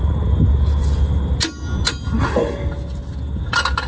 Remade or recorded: recorded